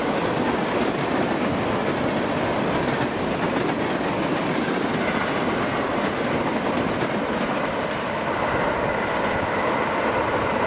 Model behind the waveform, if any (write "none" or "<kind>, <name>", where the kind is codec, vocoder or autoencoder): none